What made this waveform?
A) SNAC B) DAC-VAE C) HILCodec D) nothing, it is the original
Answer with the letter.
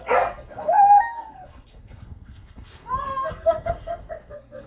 A